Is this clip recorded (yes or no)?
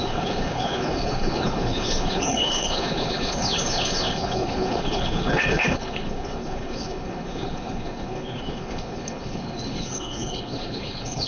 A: no